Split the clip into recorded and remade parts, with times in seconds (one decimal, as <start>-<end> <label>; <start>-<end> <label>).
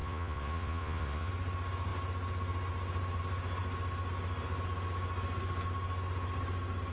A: 0.0-1.3 remade; 1.3-6.9 recorded